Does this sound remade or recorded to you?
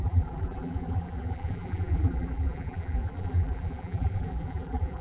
remade